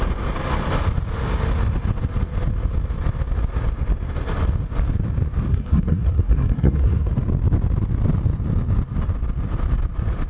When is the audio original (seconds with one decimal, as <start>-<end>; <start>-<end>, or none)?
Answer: 0.0-5.5; 7.1-10.3

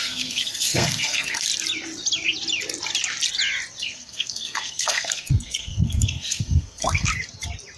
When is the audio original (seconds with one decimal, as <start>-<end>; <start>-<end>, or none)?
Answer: 1.5-3.8; 7.1-7.8

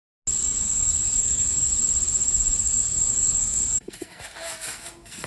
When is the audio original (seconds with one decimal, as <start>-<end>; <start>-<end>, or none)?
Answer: 0.0-0.4; 1.7-2.6

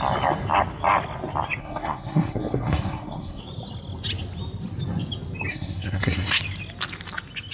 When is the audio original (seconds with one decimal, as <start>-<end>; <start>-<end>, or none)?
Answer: 0.0-1.6; 3.4-5.5; 6.4-7.5

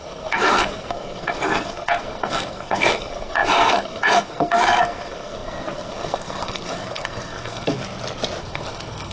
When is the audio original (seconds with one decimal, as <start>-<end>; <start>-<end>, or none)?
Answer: 7.8-8.4

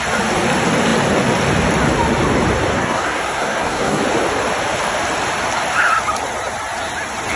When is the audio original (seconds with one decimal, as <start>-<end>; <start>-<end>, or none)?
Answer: 0.0-2.7; 4.0-7.4